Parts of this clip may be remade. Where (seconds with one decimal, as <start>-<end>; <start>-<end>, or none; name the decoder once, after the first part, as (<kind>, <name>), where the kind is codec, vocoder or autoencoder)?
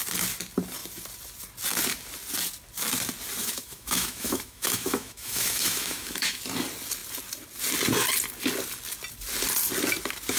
3.4-6.4 (autoencoder, DAC-VAE)